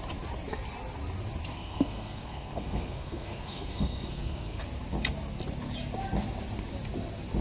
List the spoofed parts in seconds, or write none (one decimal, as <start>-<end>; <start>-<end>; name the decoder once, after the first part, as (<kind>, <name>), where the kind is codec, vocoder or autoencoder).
1.5-4.6 (codec, SNAC)